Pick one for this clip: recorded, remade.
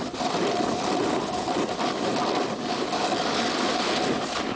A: recorded